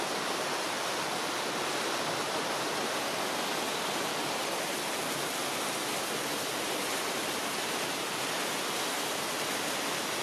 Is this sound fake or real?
real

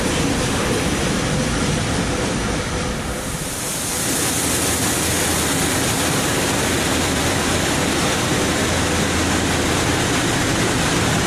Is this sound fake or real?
fake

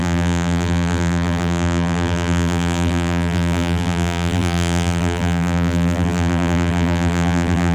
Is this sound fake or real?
fake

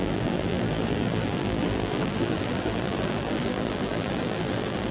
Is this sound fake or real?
fake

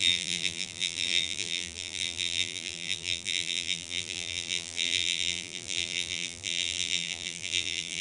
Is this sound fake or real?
fake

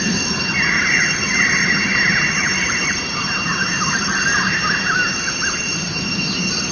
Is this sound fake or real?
fake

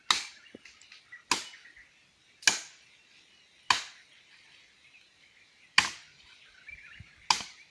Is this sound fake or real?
real